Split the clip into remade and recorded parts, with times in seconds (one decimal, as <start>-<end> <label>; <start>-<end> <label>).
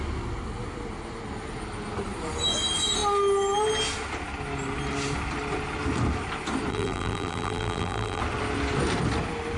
0.0-6.7 recorded; 6.7-8.2 remade; 8.2-9.6 recorded